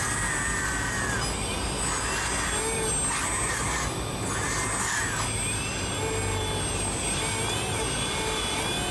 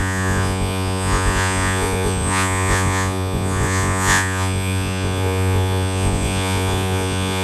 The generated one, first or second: second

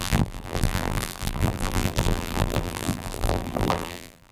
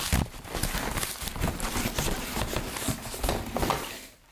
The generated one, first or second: first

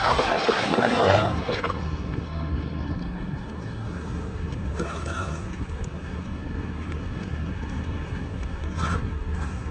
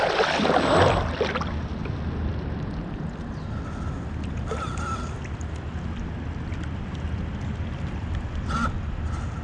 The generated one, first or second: first